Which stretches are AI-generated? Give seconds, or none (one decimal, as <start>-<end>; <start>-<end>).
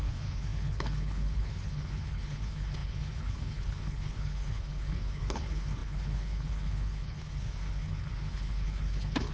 0.0-9.3